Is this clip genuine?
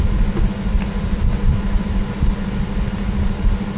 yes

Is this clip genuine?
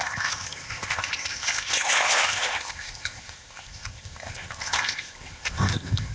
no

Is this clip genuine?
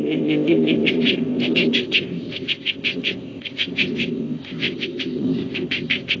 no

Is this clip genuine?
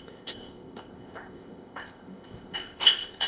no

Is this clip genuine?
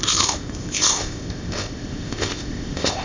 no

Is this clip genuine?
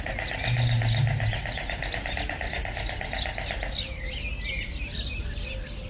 yes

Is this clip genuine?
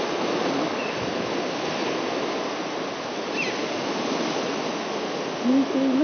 yes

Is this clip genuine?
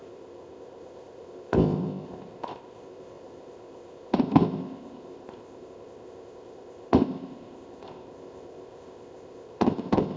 no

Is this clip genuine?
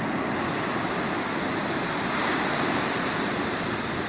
yes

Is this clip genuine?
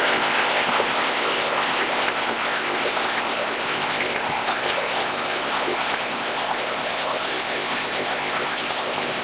no